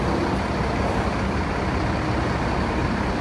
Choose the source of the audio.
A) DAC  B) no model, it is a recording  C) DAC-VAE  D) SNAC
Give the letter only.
B